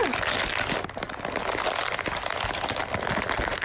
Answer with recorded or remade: recorded